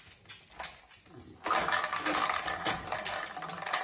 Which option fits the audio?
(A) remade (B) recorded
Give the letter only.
B